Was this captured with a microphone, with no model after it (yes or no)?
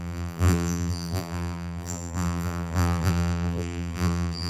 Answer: no